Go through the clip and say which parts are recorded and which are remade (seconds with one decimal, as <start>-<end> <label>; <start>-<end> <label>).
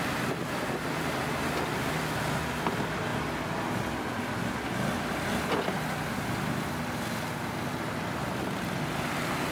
0.0-9.5 recorded